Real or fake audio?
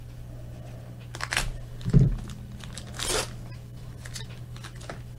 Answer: real